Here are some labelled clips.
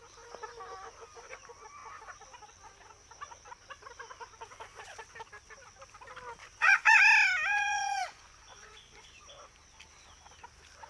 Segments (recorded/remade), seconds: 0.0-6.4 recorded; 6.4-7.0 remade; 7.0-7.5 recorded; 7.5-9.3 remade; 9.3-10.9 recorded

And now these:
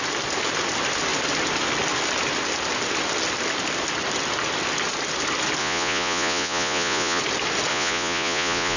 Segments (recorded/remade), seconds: 0.0-5.6 recorded; 5.6-7.2 remade; 7.2-7.7 recorded; 7.7-8.8 remade

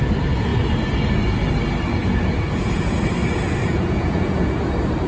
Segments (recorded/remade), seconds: 0.0-1.9 recorded; 1.9-2.7 remade; 2.7-3.6 recorded; 3.6-4.6 remade; 4.6-5.1 recorded

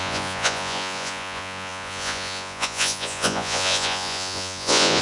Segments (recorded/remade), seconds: 0.0-5.0 remade